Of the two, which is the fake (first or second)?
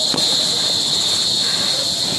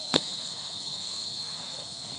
second